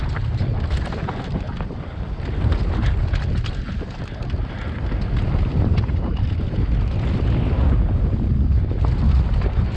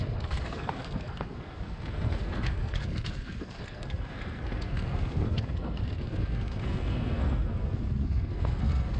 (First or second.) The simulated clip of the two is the second